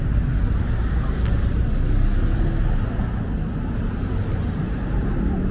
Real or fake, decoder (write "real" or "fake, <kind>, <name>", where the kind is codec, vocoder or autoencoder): real